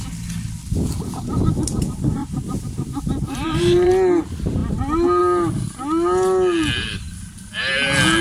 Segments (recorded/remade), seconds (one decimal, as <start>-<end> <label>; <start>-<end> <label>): 0.0-2.2 recorded; 2.2-3.9 remade; 3.9-8.2 recorded